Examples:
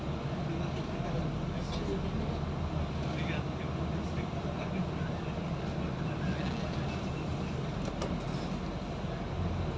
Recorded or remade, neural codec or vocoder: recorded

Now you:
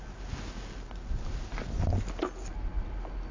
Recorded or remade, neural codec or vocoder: recorded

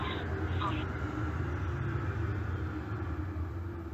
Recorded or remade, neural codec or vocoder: recorded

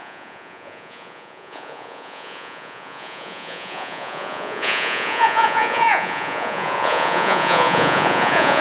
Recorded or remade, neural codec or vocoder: remade, vocoder, Vocos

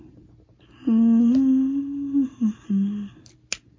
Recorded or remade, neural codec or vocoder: recorded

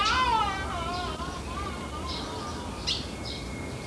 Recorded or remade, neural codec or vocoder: recorded